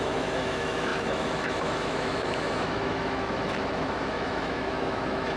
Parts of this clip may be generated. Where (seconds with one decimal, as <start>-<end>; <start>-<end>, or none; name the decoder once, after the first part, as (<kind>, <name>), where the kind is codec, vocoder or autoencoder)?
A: 0.0-5.4 (autoencoder, DAC-VAE)